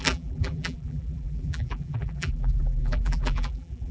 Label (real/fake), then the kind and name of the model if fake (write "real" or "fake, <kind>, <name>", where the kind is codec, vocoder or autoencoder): fake, vocoder, BigVGAN v2